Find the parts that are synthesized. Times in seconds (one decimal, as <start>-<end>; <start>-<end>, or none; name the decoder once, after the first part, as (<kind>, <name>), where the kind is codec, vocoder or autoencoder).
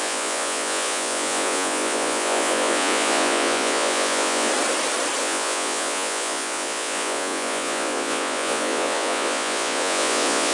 0.0-4.5 (vocoder, Vocos); 5.2-10.5